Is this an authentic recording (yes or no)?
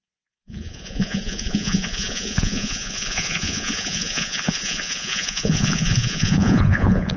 no